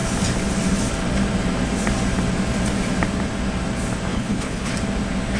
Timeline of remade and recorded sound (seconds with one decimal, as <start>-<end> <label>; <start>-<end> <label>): 0.0-4.1 recorded; 4.1-4.7 remade; 4.7-5.4 recorded

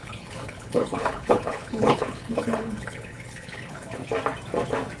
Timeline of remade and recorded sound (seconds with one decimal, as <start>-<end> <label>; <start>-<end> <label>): 0.0-4.0 remade; 4.0-5.0 recorded

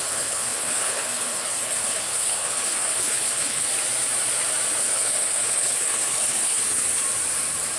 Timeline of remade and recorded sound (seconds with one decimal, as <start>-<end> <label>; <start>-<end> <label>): 0.0-3.7 remade; 3.7-4.8 recorded; 4.8-6.8 remade; 6.8-7.8 recorded

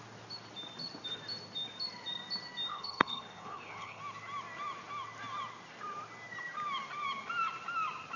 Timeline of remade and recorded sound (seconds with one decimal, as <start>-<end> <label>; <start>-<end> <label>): 0.0-2.7 recorded; 2.7-4.0 remade; 4.0-8.2 recorded

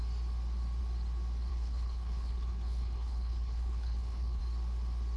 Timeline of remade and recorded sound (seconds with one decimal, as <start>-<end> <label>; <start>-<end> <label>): 0.0-1.5 recorded; 1.5-4.4 remade; 4.4-5.2 recorded

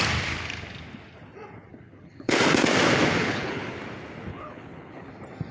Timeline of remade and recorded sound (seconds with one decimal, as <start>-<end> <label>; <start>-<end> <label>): 0.0-1.7 recorded; 1.7-2.4 remade; 2.4-3.2 recorded; 3.2-3.8 remade; 3.8-4.3 recorded; 4.3-5.1 remade; 5.1-5.5 recorded